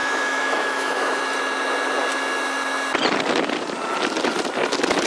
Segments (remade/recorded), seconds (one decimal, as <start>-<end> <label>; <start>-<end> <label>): 0.0-1.2 remade; 1.2-5.1 recorded

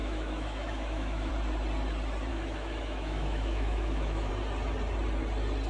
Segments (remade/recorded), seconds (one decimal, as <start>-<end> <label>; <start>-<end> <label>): 0.0-1.3 remade; 1.3-2.3 recorded; 2.3-4.3 remade; 4.3-5.7 recorded

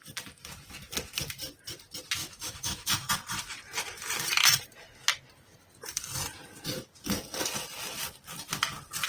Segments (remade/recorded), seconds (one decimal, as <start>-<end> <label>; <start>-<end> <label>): 0.0-2.2 recorded; 2.2-3.1 remade; 3.1-9.1 recorded

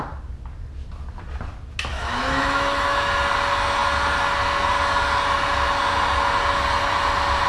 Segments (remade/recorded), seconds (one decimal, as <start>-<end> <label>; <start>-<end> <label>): 0.0-1.9 recorded; 1.9-3.1 remade; 3.1-7.5 recorded